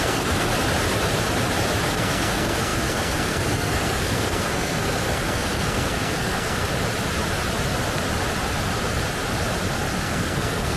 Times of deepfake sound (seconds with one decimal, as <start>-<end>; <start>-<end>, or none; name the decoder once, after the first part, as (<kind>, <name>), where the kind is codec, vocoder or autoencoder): 0.0-0.5 (codec, SNAC); 1.9-6.7; 10.0-10.8

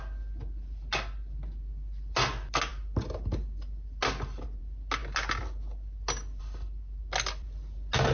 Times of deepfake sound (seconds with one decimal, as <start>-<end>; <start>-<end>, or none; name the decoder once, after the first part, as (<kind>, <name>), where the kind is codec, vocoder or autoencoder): none

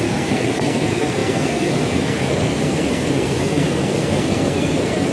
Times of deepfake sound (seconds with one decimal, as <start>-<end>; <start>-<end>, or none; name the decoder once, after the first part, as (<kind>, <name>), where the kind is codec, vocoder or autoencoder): 0.0-5.1 (codec, SNAC)